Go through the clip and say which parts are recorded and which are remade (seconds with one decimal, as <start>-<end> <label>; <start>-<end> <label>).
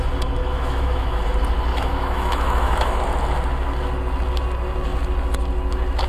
0.0-0.4 recorded; 0.4-1.2 remade; 1.2-1.7 recorded; 1.7-3.0 remade; 3.0-6.1 recorded